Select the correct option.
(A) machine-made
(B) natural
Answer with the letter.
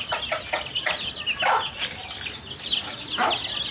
B